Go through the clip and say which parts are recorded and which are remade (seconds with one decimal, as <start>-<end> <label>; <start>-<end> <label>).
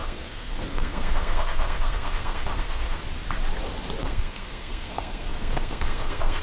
0.0-3.0 remade; 3.0-4.0 recorded; 4.0-6.4 remade